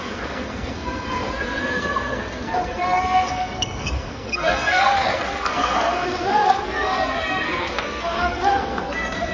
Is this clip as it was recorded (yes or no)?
no